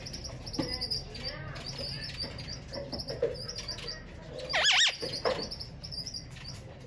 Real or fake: real